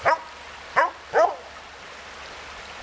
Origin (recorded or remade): recorded